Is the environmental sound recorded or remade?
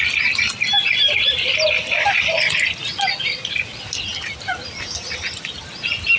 recorded